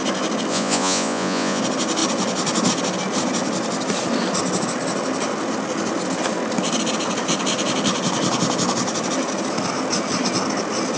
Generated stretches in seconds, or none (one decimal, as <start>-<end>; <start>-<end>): 0.5-1.6